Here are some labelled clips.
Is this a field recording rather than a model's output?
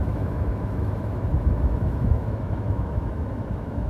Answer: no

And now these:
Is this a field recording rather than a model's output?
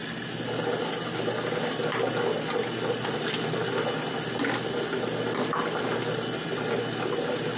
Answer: yes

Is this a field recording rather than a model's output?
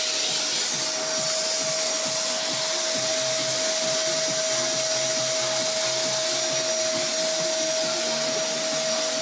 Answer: yes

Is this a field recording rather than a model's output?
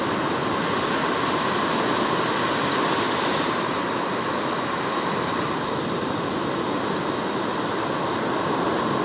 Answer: yes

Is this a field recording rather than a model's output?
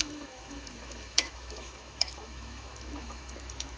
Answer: no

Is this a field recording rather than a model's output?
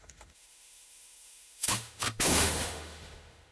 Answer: no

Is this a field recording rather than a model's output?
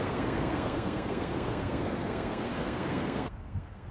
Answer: no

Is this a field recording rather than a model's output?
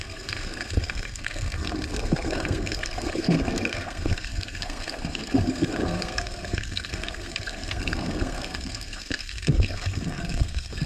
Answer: no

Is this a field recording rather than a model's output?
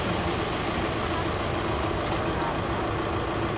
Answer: yes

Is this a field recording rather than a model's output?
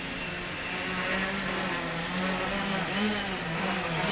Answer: yes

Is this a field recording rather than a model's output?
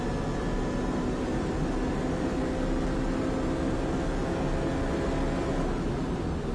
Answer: yes